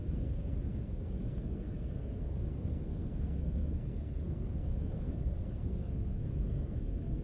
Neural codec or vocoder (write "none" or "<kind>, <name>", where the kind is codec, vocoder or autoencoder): codec, SNAC